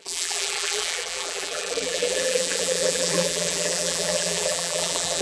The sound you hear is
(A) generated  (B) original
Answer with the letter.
A